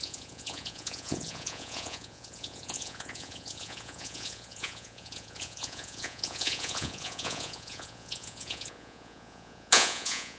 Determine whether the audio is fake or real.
fake